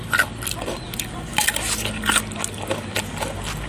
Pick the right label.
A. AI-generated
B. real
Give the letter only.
B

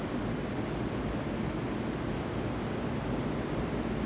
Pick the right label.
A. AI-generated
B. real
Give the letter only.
B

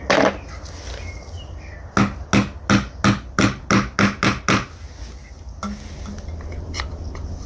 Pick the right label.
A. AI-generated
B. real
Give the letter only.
B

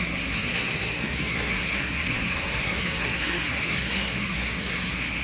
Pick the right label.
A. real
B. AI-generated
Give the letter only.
B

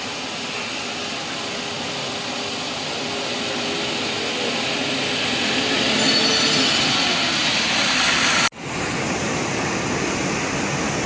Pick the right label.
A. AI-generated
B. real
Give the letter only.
B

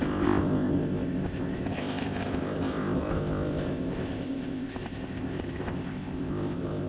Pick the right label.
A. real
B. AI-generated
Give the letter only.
B